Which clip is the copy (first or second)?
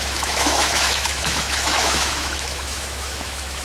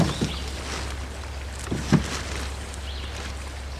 first